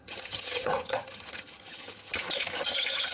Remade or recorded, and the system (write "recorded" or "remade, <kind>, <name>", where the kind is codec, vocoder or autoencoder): remade, vocoder, HiFi-GAN